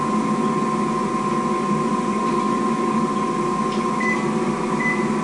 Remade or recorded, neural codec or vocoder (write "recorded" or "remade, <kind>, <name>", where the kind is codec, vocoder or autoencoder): recorded